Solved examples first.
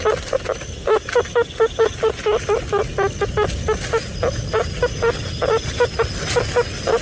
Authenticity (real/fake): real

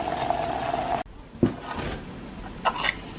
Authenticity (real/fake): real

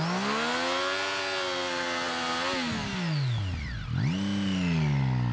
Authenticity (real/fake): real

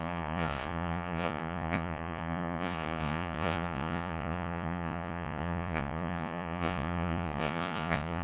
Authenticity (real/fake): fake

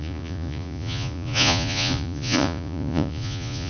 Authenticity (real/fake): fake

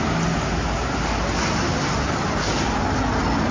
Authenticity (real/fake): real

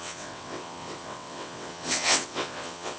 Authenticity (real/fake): fake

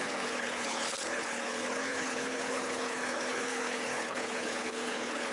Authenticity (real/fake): fake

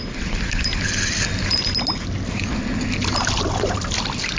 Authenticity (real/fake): real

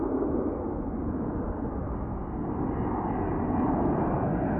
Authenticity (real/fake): real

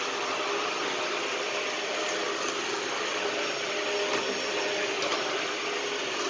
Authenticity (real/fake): real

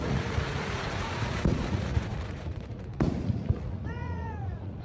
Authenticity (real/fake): fake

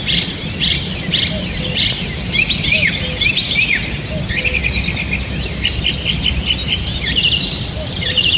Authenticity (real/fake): real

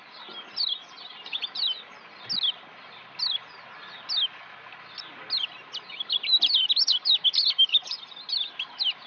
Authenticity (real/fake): real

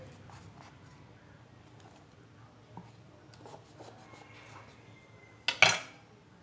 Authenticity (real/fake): real